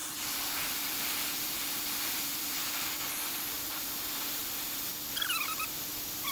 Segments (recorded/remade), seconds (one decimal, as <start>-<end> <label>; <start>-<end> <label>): 0.0-3.0 remade; 3.0-4.4 recorded; 4.4-4.9 remade; 4.9-6.3 recorded